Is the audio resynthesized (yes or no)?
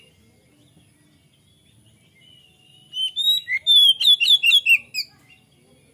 no